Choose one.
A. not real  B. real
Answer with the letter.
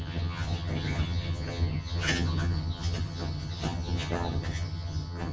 A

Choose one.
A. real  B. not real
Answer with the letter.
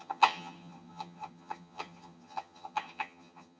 B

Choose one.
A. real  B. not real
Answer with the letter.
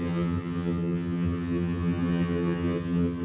B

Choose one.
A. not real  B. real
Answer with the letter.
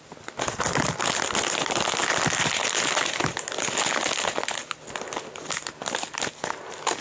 B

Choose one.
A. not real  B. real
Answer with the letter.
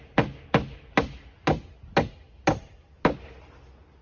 B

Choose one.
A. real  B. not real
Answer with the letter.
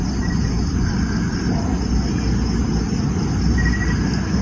A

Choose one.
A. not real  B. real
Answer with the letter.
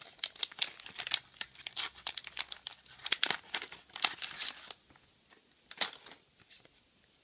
B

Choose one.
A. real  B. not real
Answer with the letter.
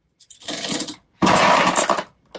A